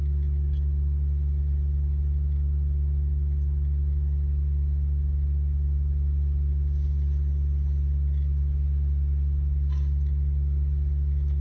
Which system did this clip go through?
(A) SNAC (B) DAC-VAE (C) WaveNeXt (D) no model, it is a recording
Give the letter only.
D